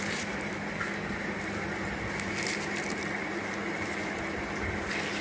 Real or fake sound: real